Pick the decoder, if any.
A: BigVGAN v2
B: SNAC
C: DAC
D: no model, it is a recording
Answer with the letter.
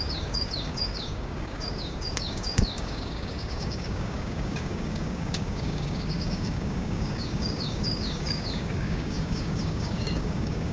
C